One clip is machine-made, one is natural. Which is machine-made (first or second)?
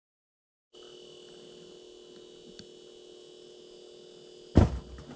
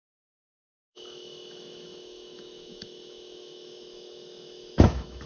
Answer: second